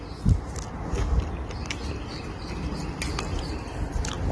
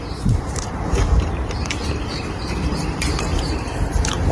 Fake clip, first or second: second